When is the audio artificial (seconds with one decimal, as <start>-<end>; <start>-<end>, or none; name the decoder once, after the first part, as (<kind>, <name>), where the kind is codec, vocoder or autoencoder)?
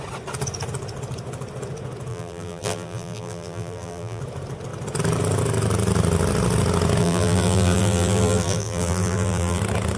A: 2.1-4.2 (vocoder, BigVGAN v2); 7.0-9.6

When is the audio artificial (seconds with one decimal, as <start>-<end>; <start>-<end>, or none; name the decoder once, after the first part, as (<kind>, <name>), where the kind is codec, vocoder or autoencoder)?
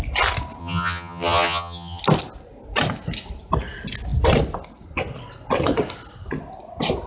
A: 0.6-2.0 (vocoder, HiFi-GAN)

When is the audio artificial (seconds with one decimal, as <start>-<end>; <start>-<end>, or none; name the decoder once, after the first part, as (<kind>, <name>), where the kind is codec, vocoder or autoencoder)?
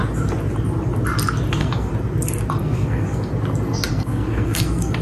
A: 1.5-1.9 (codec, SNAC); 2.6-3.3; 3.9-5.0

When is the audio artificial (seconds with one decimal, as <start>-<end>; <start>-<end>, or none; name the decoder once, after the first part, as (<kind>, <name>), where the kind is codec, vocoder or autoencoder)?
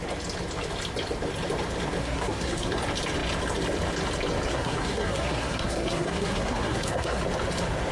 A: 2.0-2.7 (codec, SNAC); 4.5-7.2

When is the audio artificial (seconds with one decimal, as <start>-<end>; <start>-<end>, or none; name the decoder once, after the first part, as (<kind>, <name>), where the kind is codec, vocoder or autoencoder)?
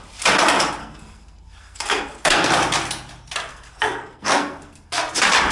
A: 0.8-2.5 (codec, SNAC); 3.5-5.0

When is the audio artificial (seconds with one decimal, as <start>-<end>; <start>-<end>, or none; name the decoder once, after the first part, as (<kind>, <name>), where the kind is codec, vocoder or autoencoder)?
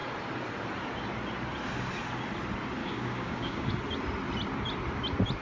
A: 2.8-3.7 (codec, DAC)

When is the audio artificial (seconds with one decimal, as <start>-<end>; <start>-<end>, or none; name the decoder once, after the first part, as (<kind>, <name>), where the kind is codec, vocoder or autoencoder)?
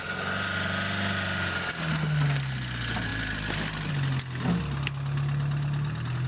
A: none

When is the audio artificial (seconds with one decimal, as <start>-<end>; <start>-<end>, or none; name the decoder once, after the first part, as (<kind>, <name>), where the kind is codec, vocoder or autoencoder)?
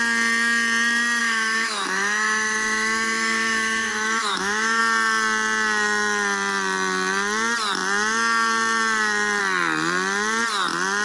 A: 1.2-4.8 (autoencoder, DAC-VAE)